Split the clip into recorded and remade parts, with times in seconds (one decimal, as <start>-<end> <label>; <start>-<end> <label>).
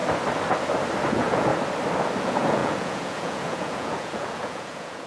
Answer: 0.0-1.1 recorded; 1.1-1.5 remade; 1.5-2.2 recorded; 2.2-5.1 remade